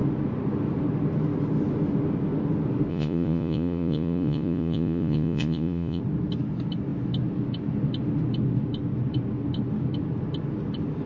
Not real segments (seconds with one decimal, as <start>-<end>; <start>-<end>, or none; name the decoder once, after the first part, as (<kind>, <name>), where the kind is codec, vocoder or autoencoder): 2.9-6.0 (vocoder, Vocos)